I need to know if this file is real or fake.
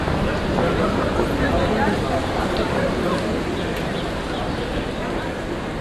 real